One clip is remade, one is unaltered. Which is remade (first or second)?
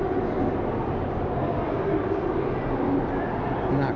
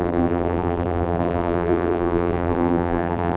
second